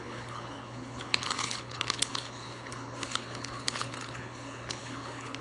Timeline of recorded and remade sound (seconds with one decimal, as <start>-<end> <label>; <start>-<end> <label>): 0.0-5.4 remade